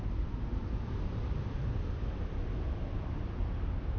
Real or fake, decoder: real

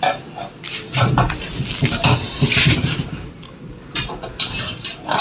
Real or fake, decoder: real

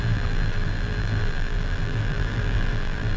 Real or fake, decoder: fake, vocoder, BigVGAN v2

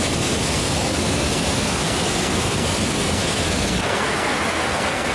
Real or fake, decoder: fake, codec, SNAC